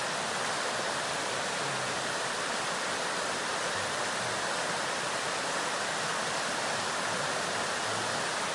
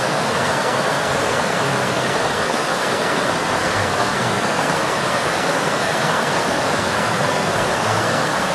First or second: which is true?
first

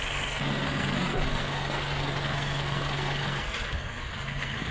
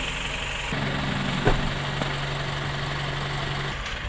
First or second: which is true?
second